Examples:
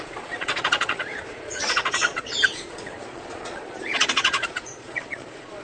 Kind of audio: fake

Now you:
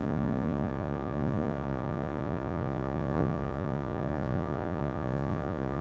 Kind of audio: fake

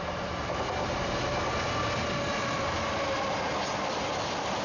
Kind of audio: real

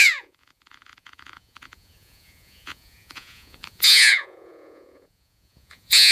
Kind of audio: fake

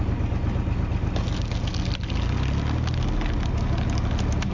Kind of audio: real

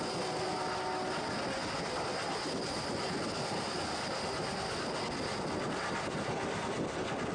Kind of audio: real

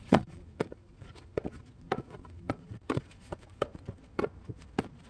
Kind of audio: fake